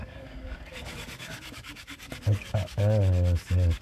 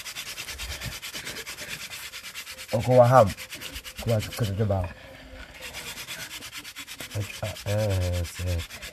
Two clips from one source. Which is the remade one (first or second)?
first